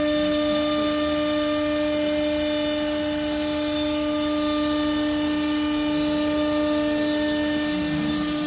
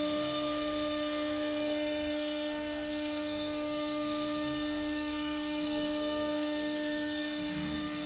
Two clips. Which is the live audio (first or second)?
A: first